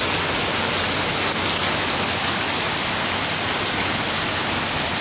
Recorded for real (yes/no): yes